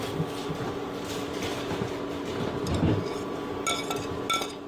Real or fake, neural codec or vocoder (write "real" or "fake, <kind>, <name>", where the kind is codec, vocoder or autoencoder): real